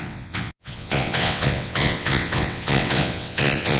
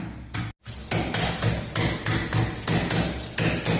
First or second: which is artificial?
first